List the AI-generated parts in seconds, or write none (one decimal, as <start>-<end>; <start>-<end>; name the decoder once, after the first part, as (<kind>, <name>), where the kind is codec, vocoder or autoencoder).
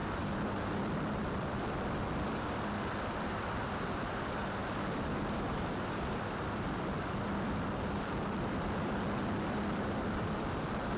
0.0-4.6 (vocoder, BigVGAN v2); 5.2-11.0